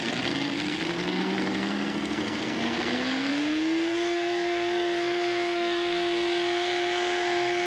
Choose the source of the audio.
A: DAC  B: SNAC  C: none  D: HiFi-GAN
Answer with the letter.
B